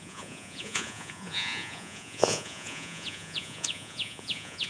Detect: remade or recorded remade